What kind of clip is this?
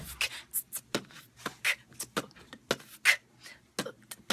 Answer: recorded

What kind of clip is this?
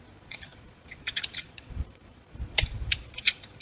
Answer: remade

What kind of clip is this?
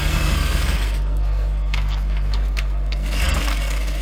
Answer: remade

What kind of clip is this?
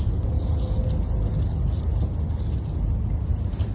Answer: recorded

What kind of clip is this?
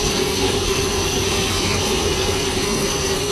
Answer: remade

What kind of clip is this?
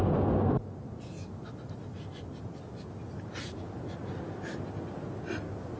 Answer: recorded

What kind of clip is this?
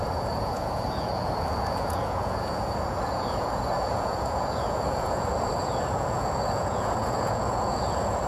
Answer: remade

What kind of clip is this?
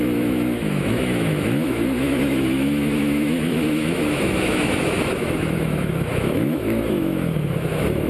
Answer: remade